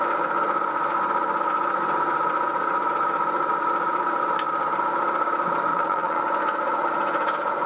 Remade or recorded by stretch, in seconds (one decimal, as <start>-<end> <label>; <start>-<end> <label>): 0.0-5.7 recorded; 5.7-6.2 remade; 6.2-7.7 recorded